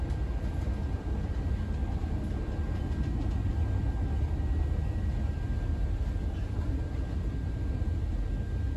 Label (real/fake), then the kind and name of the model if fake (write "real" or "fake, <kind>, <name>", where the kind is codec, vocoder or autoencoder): real